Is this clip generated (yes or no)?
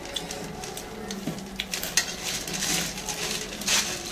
no